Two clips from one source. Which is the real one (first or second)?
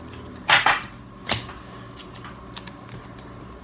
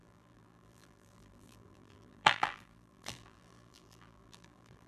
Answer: first